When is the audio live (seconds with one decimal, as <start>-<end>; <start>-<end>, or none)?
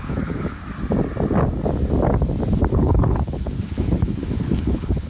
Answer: 0.6-2.7